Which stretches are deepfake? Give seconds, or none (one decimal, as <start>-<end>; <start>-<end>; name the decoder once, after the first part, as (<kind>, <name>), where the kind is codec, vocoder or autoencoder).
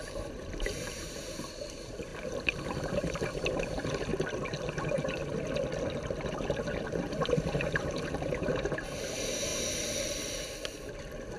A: 0.0-4.1 (vocoder, BigVGAN v2); 4.6-5.2; 6.3-9.5